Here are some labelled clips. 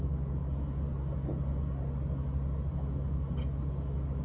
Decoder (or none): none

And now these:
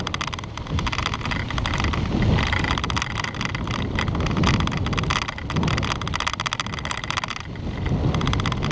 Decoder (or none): none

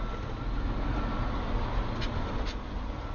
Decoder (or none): none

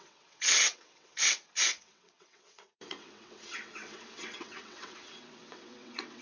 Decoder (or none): vocoder, WaveNeXt